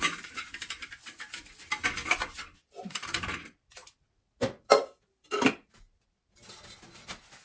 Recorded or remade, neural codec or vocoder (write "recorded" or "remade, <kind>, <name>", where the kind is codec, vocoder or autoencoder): recorded